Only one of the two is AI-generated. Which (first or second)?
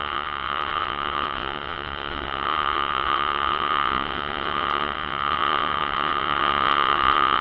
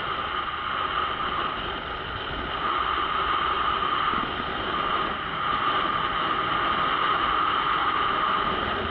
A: first